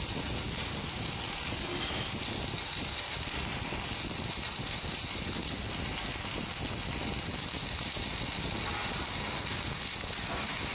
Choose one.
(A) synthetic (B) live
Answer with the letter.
B